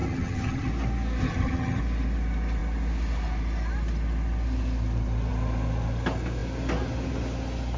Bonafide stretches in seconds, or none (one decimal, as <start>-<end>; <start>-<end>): 0.7-1.2; 1.8-7.8